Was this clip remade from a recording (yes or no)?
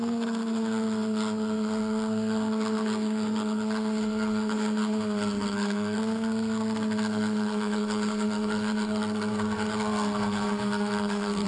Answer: yes